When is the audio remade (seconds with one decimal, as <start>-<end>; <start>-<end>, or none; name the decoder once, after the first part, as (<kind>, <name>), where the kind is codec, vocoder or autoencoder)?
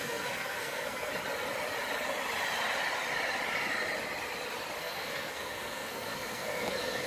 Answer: 0.0-1.1 (codec, SNAC); 4.8-7.1